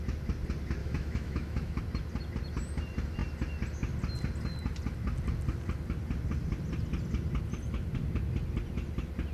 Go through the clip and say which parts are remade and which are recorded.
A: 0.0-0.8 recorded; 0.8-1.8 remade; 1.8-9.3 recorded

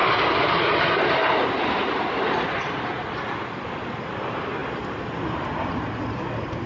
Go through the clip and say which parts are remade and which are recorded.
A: 0.0-6.7 recorded

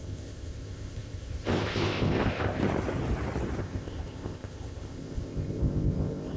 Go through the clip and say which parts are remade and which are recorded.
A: 0.0-2.6 remade; 2.6-3.6 recorded; 3.6-6.4 remade

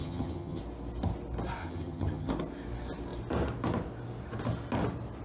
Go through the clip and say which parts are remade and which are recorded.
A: 0.0-0.6 remade; 0.6-1.6 recorded; 1.6-2.3 remade; 2.3-5.2 recorded